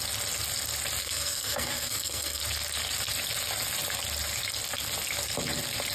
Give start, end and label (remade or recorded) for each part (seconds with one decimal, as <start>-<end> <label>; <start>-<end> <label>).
0.0-1.0 recorded; 1.0-2.4 remade; 2.4-5.9 recorded